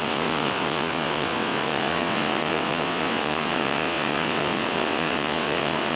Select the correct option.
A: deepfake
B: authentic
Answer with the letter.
A